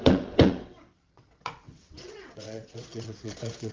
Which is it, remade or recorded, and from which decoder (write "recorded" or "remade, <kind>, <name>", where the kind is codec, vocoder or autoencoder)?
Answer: remade, vocoder, WaveNeXt